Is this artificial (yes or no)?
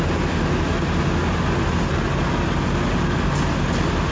no